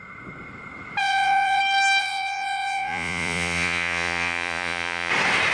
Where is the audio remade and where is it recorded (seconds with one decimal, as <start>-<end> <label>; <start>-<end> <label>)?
0.0-1.0 recorded; 1.0-1.6 remade; 1.6-2.0 recorded; 2.0-5.1 remade; 5.1-5.5 recorded